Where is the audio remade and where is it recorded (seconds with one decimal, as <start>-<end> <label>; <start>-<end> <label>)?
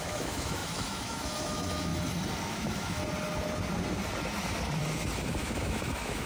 0.0-1.9 remade; 1.9-2.5 recorded; 2.5-3.0 remade; 3.0-5.4 recorded; 5.4-6.3 remade